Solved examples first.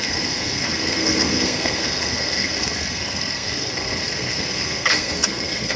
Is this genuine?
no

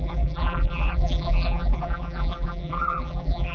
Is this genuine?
no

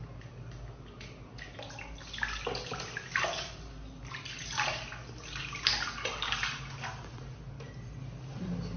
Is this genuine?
yes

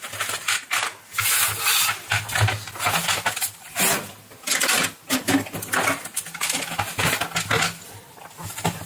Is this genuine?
yes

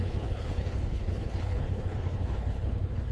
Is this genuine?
no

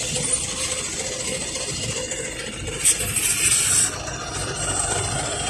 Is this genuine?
yes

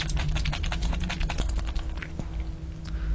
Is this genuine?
yes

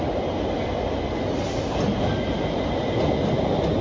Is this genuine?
yes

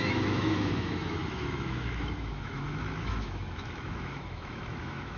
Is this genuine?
no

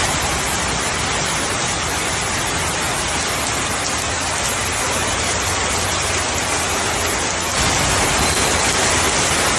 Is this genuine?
yes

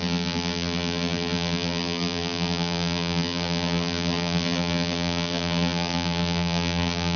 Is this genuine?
no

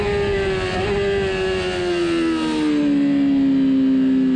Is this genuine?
yes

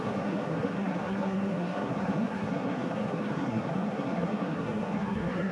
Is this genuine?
no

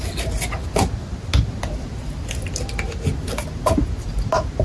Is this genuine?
yes